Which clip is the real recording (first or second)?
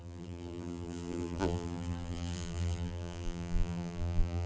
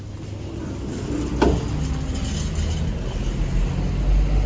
second